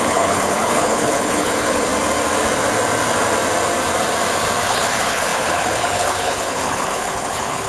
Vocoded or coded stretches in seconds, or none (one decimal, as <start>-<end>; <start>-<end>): 0.0-1.9; 4.7-7.7